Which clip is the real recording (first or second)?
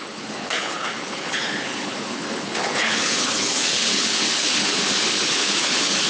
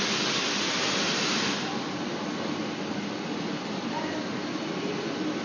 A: second